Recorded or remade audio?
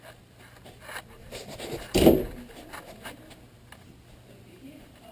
recorded